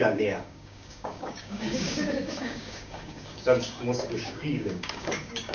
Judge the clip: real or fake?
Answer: fake